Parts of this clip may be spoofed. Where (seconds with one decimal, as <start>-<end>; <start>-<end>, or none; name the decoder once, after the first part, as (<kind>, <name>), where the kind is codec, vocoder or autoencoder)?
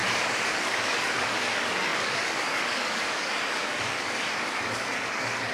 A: 0.0-5.5 (codec, DAC)